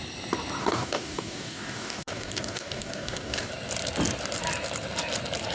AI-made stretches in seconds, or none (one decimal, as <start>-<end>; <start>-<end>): 0.6-3.5